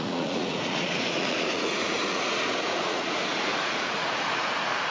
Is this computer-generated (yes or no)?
yes